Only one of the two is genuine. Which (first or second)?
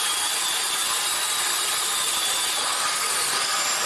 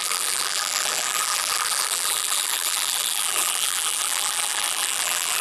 first